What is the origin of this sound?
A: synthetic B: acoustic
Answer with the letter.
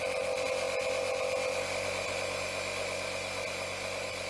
B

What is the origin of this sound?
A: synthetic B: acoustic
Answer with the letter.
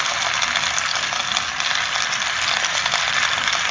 B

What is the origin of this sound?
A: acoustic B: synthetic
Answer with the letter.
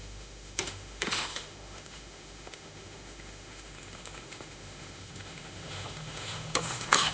B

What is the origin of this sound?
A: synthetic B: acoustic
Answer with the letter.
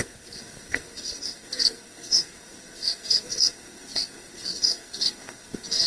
A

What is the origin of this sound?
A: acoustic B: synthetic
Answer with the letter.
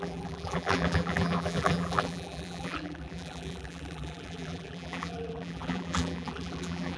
B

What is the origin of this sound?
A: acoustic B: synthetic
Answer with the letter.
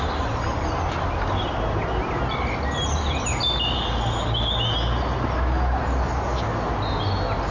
A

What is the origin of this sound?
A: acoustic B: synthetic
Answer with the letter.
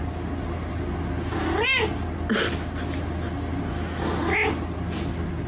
A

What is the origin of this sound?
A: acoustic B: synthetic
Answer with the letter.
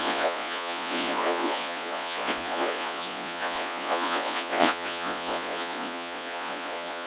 B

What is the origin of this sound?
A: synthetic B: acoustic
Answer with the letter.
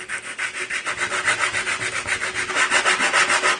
B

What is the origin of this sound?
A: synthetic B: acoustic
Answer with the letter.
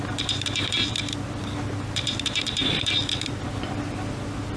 A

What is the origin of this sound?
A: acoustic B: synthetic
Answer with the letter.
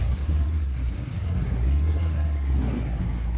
B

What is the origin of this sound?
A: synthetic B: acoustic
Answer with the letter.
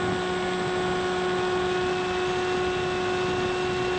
B